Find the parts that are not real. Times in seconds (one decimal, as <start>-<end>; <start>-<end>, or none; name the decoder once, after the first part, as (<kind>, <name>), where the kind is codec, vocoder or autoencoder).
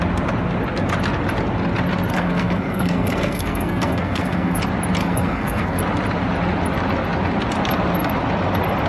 2.1-4.6 (codec, SNAC); 5.0-5.8